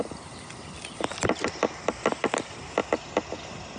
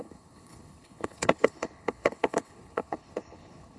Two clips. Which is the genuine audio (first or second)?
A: first